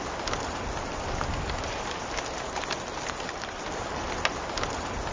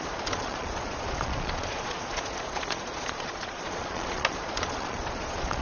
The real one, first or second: first